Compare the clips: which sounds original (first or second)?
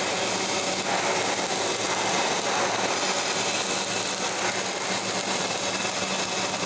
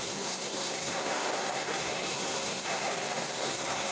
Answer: first